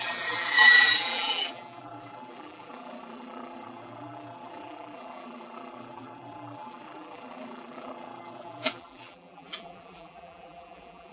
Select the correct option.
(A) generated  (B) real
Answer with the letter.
A